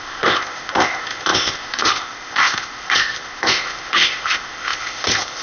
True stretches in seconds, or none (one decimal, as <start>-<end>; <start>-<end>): none